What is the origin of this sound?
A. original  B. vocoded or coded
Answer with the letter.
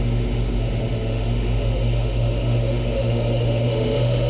B